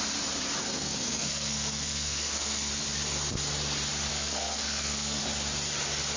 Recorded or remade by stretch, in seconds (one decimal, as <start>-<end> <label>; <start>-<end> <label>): 0.0-0.6 recorded; 0.6-2.7 remade; 2.7-4.1 recorded; 4.1-5.2 remade; 5.2-6.2 recorded